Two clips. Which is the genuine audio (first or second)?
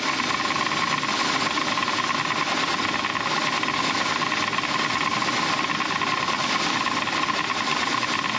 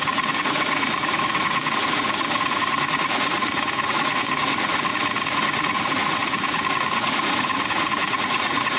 first